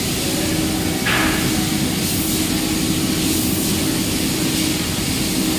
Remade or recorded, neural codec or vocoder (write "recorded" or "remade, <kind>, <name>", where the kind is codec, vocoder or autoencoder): recorded